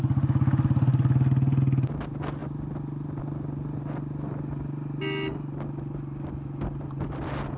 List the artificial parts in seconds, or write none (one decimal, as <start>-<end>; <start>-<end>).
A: none